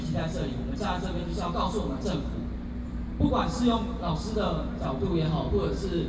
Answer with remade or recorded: recorded